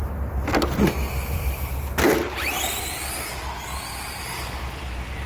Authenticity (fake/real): real